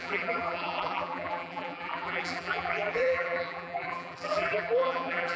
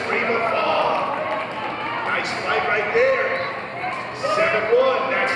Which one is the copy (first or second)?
first